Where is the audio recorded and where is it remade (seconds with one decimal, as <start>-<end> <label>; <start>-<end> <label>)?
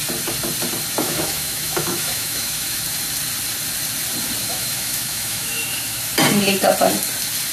0.0-1.0 recorded; 1.0-2.8 remade; 2.8-4.4 recorded; 4.4-6.1 remade; 6.1-7.5 recorded